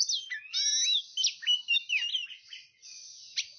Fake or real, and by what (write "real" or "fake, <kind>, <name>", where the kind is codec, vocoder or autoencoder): real